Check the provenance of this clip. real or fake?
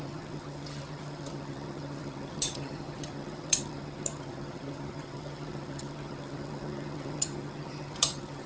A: fake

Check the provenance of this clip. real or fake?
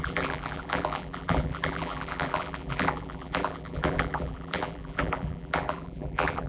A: fake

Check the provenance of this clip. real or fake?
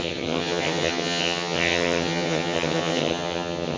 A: fake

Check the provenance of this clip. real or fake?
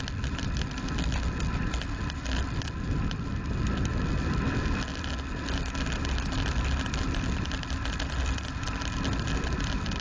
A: real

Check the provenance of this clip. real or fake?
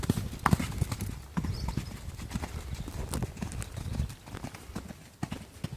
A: real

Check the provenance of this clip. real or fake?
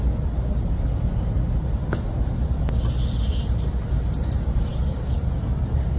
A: real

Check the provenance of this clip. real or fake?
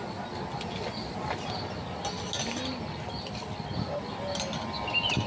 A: real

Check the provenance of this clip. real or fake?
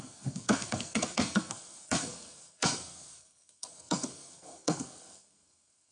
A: fake